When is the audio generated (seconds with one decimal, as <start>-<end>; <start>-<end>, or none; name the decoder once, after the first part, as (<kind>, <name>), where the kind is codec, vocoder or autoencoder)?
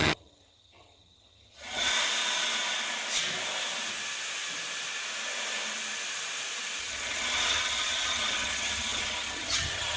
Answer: 0.0-1.9 (vocoder, HiFi-GAN); 6.8-10.0